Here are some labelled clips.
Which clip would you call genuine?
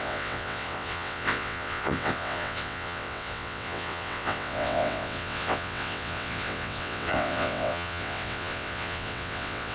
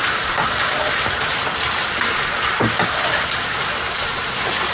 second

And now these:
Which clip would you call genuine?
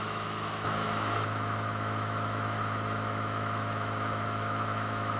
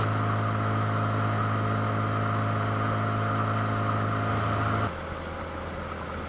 second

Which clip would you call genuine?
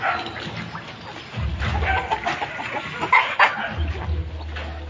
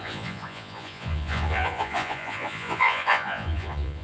first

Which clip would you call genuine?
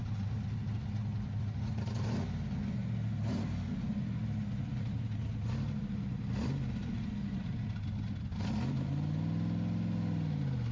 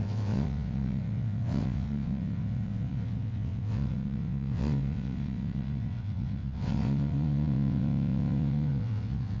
first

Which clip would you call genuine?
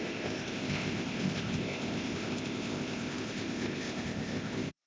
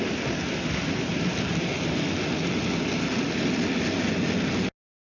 second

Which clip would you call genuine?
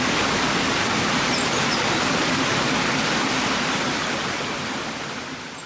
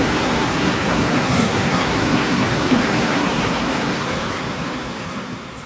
first